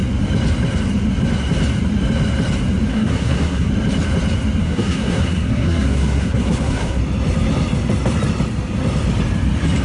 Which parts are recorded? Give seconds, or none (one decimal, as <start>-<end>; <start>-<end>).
0.0-2.9; 3.7-4.6; 7.0-9.8